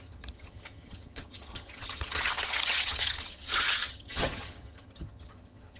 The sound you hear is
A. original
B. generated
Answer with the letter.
B